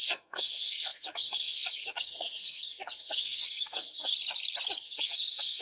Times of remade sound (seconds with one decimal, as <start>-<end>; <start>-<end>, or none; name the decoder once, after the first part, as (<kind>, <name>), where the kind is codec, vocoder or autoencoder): 0.0-4.1 (codec, SNAC); 4.8-5.6